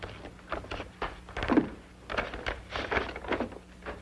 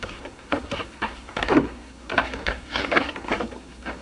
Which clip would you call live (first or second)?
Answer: first